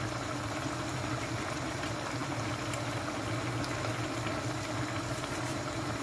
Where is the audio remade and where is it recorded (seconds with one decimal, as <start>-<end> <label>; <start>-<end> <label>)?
0.0-6.0 recorded